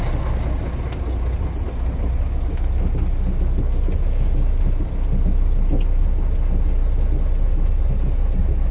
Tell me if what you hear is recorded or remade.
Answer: recorded